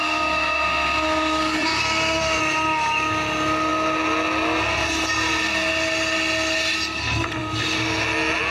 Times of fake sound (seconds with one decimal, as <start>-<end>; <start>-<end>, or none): 0.0-2.4